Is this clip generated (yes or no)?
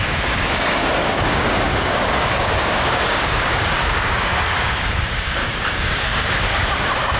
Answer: yes